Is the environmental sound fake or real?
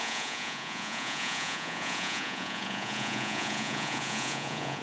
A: fake